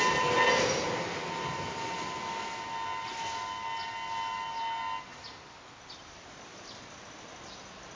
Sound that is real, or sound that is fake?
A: real